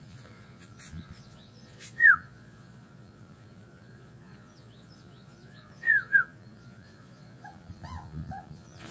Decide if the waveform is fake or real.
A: fake